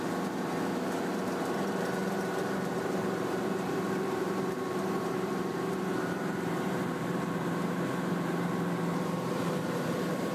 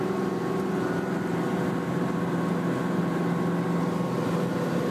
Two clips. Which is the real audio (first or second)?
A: second